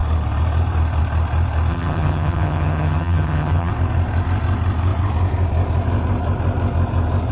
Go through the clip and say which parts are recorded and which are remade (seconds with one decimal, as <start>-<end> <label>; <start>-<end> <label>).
0.0-1.7 recorded; 1.7-3.7 remade; 3.7-7.3 recorded